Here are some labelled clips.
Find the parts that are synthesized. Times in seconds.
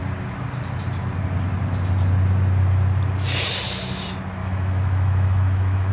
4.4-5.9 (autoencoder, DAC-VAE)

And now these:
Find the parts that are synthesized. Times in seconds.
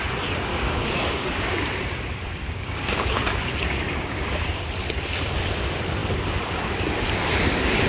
0.5-1.8 (codec, DAC); 2.4-4.7